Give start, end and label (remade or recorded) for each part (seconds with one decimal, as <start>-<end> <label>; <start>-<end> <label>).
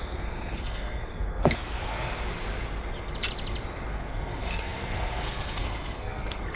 0.0-1.9 remade; 1.9-3.9 recorded; 3.9-6.6 remade